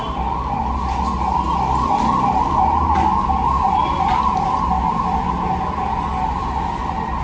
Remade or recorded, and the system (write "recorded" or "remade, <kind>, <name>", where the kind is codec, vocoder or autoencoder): recorded